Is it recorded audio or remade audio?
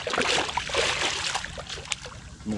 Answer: recorded